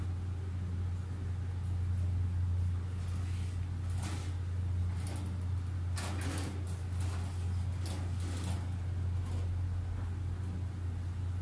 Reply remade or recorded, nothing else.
recorded